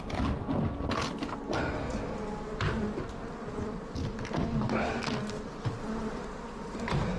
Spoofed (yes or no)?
no